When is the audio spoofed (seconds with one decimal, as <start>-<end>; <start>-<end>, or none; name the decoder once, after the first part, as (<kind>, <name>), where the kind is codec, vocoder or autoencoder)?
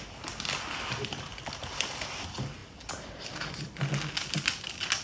none